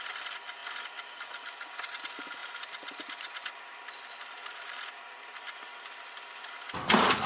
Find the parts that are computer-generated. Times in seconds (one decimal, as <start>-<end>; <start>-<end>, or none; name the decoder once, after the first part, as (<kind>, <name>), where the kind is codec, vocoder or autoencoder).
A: none